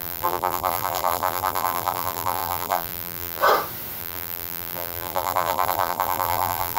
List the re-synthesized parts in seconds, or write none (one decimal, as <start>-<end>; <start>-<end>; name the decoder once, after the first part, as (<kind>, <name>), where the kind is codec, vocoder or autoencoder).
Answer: 0.0-3.4 (vocoder, BigVGAN v2); 4.0-6.8